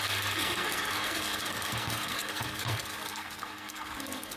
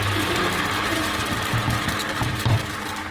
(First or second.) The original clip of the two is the second